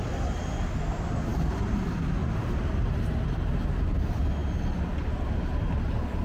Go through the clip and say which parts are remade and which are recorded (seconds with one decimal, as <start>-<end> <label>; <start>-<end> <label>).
0.0-1.3 recorded; 1.3-1.8 remade; 1.8-2.2 recorded; 2.2-3.9 remade; 3.9-6.2 recorded